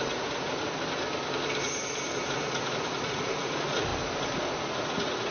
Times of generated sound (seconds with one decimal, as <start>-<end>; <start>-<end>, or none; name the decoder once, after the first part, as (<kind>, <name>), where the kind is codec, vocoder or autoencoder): 0.0-0.5 (vocoder, Vocos); 2.3-3.9; 4.7-5.3